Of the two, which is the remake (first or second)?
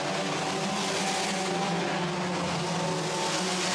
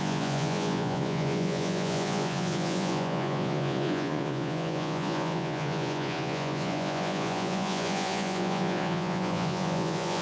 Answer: second